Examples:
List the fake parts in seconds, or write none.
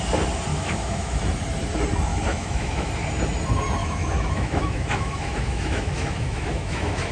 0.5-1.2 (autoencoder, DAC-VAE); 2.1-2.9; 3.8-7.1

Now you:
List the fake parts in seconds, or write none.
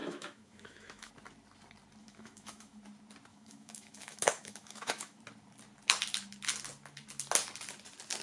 0.0-1.1 (autoencoder, DAC-VAE); 2.0-2.8; 3.3-5.2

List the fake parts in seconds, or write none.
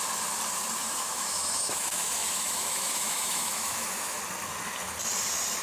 0.8-4.2 (autoencoder, DAC-VAE)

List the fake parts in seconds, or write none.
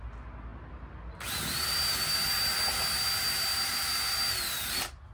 none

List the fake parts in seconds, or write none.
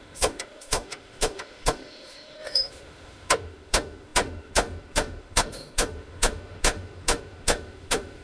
0.0-8.2 (autoencoder, DAC-VAE)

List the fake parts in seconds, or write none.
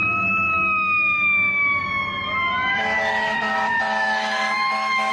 0.0-1.8 (autoencoder, DAC-VAE); 2.7-5.1